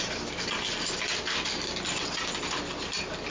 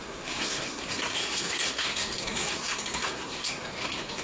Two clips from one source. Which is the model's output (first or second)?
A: second